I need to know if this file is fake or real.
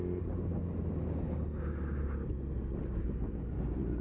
real